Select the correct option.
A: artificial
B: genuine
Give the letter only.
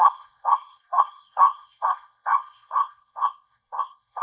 A